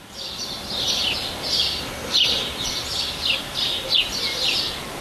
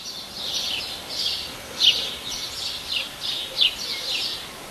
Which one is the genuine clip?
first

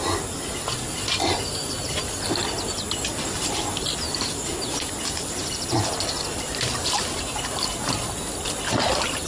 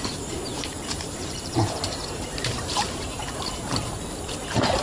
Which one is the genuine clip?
first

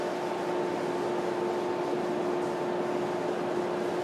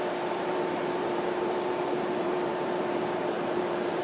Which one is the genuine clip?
first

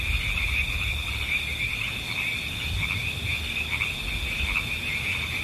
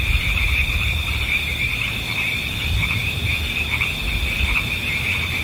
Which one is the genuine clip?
first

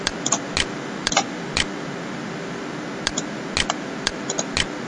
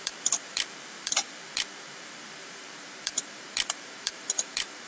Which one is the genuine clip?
first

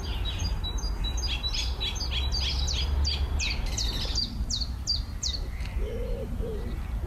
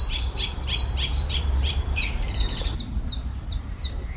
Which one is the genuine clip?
first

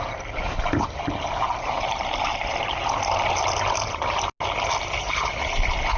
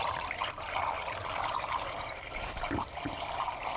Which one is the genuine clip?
first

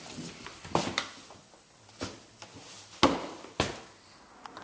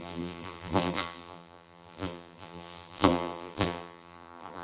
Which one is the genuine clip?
first